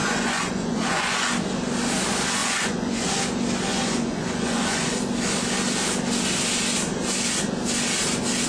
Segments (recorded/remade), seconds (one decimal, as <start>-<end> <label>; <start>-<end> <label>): 0.0-1.3 remade; 1.3-2.4 recorded; 2.4-3.1 remade; 3.1-3.7 recorded; 3.7-5.0 remade; 5.0-8.5 recorded